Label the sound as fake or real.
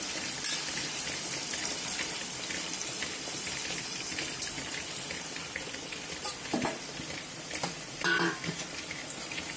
fake